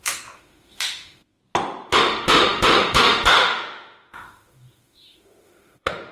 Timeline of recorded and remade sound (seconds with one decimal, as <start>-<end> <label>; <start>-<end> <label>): 0.0-1.4 remade; 1.4-1.9 recorded; 1.9-6.1 remade